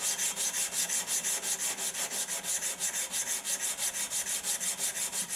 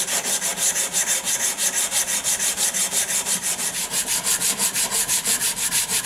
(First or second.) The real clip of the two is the first